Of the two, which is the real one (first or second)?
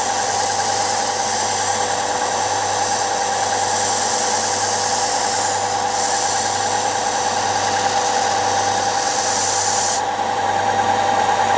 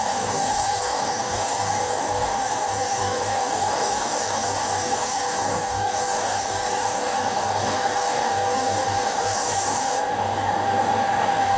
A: first